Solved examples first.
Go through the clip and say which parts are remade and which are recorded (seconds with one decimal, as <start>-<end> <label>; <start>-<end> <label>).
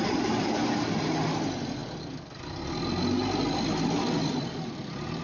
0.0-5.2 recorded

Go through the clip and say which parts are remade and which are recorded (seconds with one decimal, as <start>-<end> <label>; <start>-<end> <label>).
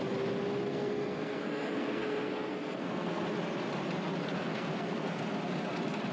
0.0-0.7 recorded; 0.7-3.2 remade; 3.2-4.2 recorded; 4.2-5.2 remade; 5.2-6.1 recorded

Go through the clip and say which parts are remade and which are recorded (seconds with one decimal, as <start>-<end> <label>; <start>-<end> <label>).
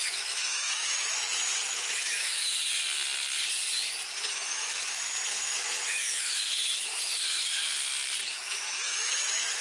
0.0-2.7 remade; 2.7-4.2 recorded; 4.2-7.7 remade; 7.7-8.3 recorded; 8.3-9.6 remade